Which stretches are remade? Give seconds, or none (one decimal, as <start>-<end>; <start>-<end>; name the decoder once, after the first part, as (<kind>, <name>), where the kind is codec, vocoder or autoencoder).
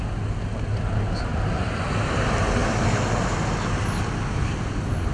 none